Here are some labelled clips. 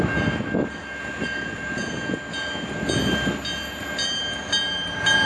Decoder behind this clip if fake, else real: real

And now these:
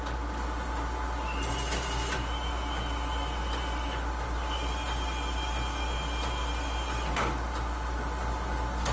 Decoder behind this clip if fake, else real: real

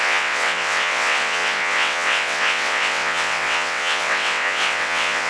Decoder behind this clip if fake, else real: fake, vocoder, WaveNeXt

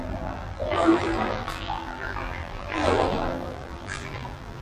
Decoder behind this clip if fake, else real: fake, vocoder, BigVGAN v2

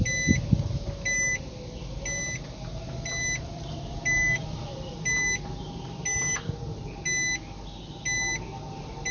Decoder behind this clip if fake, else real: real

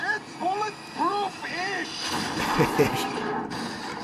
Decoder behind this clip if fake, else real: real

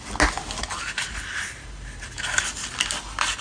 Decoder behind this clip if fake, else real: real